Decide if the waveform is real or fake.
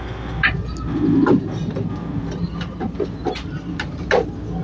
real